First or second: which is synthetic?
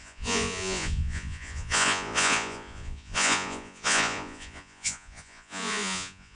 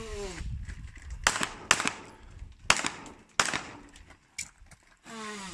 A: first